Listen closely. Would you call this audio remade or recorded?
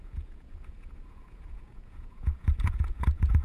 remade